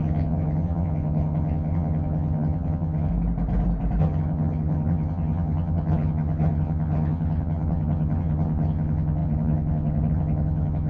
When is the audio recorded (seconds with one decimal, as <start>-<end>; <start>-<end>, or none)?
3.1-4.0